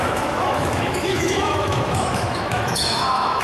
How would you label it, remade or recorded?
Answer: remade